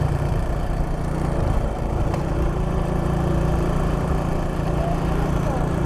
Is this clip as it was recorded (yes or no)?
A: no